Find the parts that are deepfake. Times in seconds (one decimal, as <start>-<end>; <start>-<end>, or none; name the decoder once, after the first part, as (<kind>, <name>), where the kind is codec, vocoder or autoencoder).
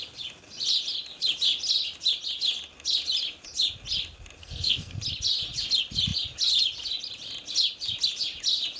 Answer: 4.4-5.0 (codec, SNAC)